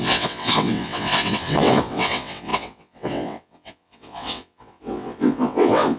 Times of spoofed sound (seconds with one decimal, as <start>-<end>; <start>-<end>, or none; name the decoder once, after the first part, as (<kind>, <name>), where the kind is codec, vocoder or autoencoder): 0.0-6.0 (vocoder, WaveNeXt)